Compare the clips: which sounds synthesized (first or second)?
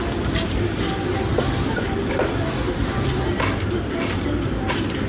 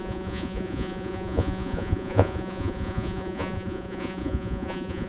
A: second